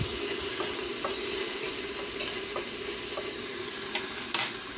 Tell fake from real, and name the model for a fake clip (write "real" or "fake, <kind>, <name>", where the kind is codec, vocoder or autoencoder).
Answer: real